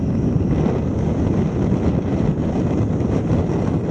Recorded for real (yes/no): yes